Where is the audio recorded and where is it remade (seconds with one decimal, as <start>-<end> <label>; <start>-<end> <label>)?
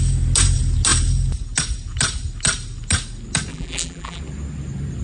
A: 0.0-3.5 recorded; 3.5-4.2 remade; 4.2-5.0 recorded